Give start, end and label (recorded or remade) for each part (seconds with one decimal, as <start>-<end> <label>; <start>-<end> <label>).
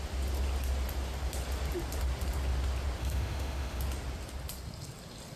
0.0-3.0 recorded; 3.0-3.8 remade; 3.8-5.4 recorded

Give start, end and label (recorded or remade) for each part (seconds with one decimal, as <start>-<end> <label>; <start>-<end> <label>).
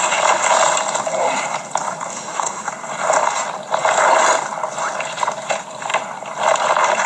0.0-2.1 recorded; 2.1-2.7 remade; 2.7-7.1 recorded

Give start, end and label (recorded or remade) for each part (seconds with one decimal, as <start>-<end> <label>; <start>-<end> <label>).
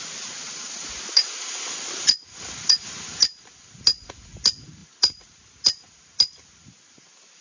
0.0-7.4 recorded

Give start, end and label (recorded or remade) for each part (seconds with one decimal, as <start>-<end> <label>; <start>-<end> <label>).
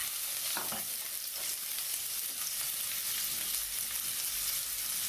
0.0-5.1 recorded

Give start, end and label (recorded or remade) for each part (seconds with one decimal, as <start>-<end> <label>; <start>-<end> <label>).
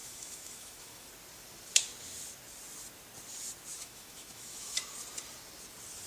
0.0-1.1 remade; 1.1-3.7 recorded; 3.7-4.8 remade; 4.8-6.1 recorded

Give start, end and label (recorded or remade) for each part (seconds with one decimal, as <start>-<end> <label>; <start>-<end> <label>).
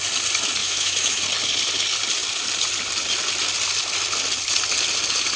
0.0-0.6 recorded; 0.6-1.2 remade; 1.2-5.4 recorded